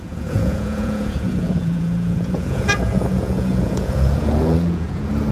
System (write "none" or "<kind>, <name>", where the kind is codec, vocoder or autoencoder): vocoder, Vocos